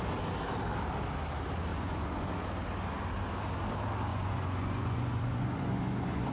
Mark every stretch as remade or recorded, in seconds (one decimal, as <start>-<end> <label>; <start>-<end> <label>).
0.0-1.7 recorded; 1.7-2.3 remade; 2.3-4.1 recorded; 4.1-6.3 remade